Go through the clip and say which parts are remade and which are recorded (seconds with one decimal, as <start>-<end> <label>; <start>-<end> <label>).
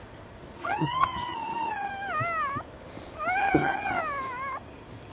0.0-0.6 recorded; 0.6-1.9 remade; 1.9-3.4 recorded; 3.4-4.0 remade; 4.0-5.1 recorded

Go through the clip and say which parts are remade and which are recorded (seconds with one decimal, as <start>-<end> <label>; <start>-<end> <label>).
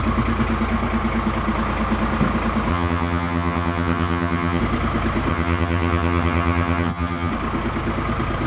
0.0-2.7 recorded; 2.7-4.6 remade; 4.6-5.3 recorded; 5.3-7.3 remade; 7.3-8.5 recorded